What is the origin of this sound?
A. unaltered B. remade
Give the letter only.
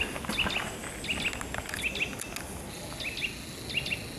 A